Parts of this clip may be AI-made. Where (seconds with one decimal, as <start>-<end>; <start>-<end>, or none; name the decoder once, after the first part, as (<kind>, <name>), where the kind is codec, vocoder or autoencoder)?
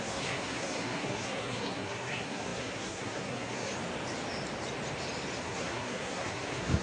0.0-3.7 (codec, SNAC); 5.4-6.8